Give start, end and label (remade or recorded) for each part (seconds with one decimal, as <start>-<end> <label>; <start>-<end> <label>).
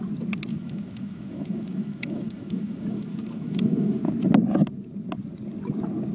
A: 0.0-0.5 recorded; 0.5-4.0 remade; 4.0-6.1 recorded